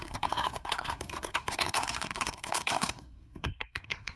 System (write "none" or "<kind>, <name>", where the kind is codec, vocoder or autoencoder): codec, SNAC